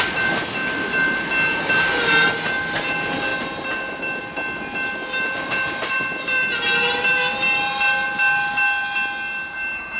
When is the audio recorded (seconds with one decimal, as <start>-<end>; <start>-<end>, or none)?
0.0-10.0